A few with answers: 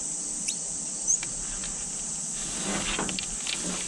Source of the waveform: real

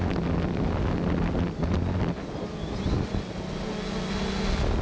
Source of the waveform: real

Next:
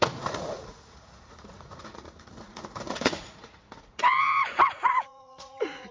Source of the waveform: fake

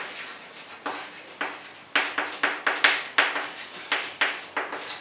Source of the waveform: real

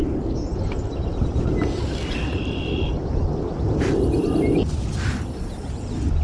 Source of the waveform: real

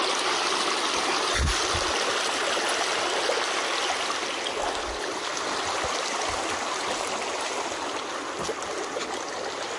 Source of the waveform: real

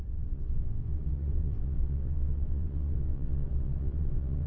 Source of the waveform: fake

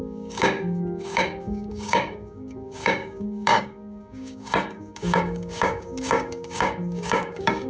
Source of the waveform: fake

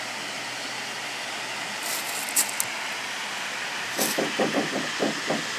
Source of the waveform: real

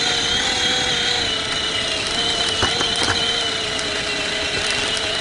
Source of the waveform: real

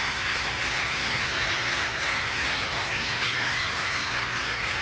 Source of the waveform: fake